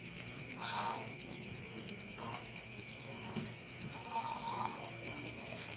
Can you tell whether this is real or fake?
fake